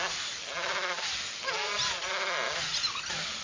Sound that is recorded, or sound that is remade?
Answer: recorded